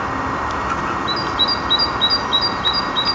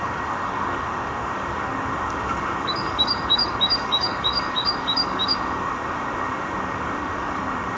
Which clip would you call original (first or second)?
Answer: first